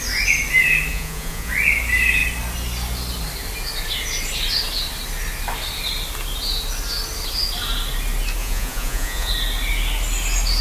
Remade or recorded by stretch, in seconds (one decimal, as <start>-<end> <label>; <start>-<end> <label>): 0.0-0.9 recorded; 0.9-1.5 remade; 1.5-8.4 recorded; 8.4-9.3 remade; 9.3-10.6 recorded